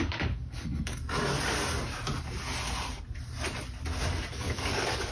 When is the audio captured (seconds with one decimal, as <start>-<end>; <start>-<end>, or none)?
1.2-4.3